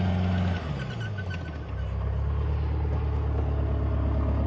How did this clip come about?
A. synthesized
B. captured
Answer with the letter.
B